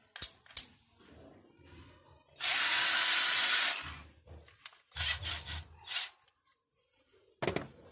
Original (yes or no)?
yes